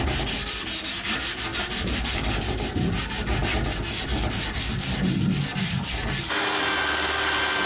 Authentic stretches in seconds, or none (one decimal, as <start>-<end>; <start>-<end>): 0.0-1.5; 2.3-7.7

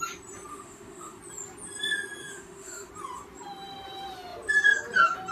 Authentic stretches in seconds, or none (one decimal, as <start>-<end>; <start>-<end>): 0.0-0.5; 1.2-2.2; 2.9-5.3

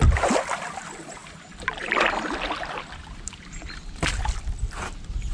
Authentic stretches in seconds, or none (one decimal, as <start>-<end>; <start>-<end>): 0.0-5.3

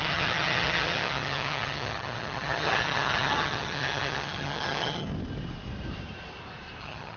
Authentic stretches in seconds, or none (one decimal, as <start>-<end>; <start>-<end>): 5.1-6.8

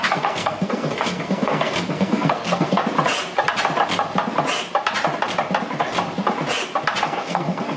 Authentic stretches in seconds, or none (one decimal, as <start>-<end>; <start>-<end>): 2.8-7.0

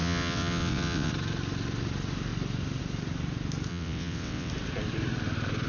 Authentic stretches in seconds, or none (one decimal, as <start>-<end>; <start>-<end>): 1.1-3.7; 4.5-5.7

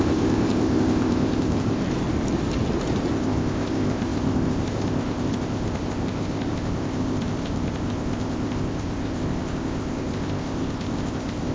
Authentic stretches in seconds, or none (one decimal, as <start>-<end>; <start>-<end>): 1.8-3.1

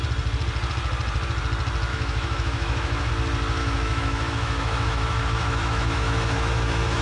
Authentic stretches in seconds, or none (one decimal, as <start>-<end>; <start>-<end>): 0.0-1.9; 3.1-3.6